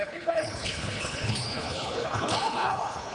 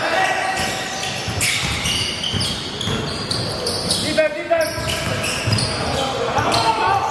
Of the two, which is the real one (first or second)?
second